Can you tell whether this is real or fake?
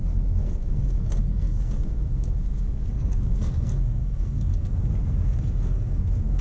fake